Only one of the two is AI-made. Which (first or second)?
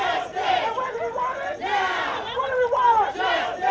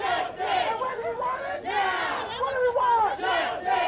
first